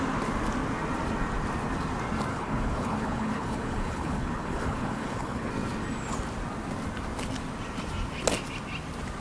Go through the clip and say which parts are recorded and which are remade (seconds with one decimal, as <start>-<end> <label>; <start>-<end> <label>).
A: 0.0-2.3 recorded; 2.3-5.5 remade; 5.5-9.2 recorded